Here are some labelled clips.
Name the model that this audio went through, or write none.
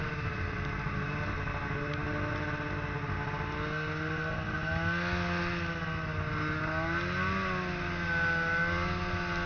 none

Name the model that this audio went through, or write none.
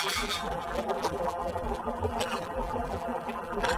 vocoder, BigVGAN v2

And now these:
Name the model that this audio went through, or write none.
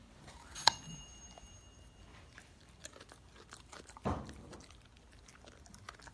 none